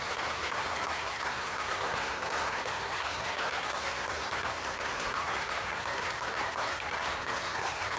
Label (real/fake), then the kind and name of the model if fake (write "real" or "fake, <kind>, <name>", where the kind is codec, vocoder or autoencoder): fake, codec, SNAC